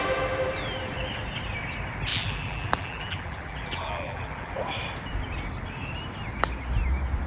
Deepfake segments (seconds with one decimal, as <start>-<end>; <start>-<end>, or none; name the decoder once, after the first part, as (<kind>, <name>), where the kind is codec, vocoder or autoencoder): 2.1-4.5 (vocoder, BigVGAN v2)